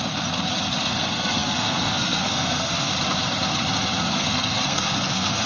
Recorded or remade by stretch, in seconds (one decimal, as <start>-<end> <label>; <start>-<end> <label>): 0.0-0.8 recorded; 0.8-2.9 remade; 2.9-4.0 recorded; 4.0-5.5 remade